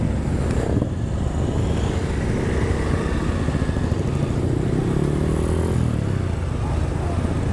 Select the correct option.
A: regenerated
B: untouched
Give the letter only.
B